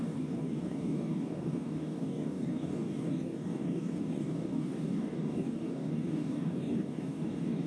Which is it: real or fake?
fake